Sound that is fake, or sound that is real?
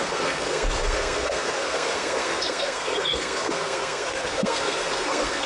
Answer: fake